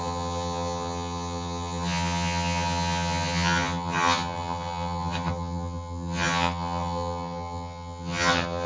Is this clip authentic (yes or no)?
no